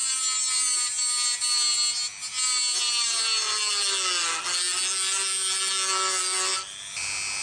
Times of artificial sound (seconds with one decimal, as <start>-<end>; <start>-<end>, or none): none

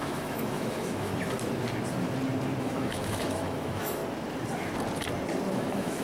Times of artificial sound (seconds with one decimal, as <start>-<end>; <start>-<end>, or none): 0.0-1.1; 2.6-4.0; 5.5-6.0